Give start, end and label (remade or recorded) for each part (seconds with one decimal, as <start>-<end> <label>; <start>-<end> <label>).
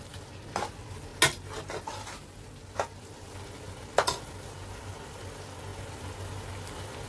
0.0-7.1 recorded